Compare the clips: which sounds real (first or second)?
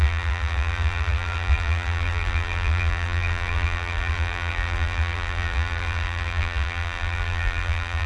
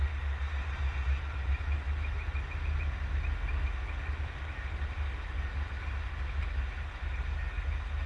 second